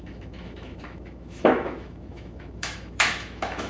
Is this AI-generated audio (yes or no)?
yes